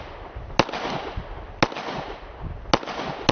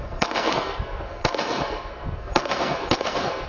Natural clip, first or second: first